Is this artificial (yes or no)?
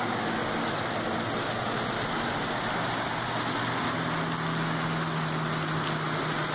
no